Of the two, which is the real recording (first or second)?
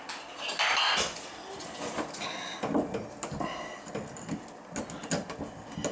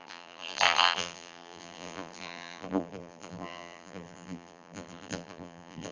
first